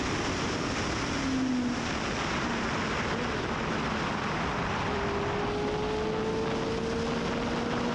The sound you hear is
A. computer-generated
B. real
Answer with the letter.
B